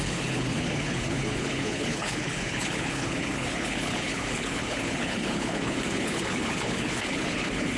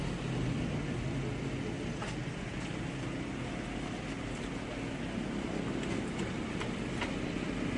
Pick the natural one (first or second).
second